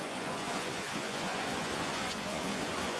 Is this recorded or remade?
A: remade